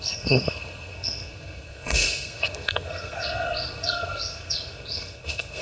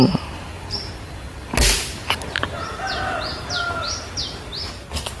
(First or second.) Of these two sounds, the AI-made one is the first